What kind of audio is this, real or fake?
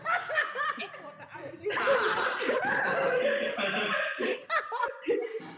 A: real